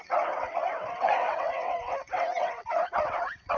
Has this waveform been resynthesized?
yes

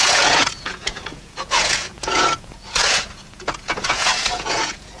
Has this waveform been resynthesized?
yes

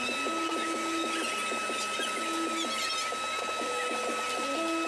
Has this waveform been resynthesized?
no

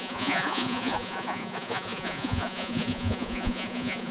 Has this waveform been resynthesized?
yes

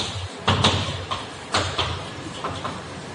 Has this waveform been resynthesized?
yes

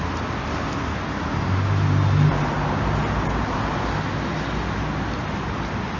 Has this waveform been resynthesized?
no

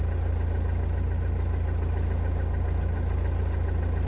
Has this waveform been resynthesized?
no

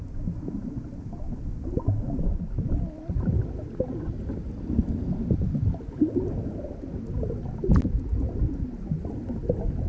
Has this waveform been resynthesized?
no